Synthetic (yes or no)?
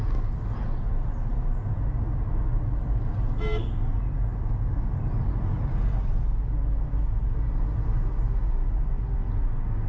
no